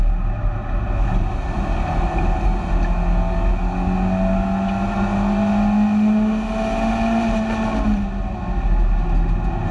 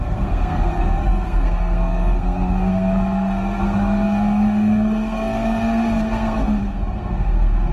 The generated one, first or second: second